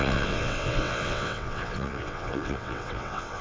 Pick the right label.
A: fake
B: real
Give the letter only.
A